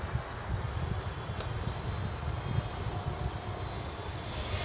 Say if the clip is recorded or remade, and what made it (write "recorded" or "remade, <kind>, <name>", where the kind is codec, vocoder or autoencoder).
recorded